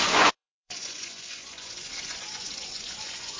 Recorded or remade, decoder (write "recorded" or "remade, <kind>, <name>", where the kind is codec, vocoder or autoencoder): remade, vocoder, Vocos